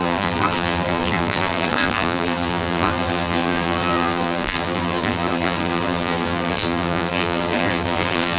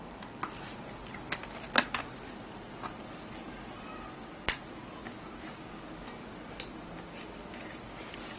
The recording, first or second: second